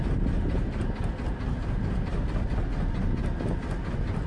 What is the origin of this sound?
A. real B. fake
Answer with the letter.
A